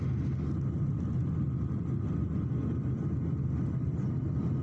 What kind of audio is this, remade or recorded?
recorded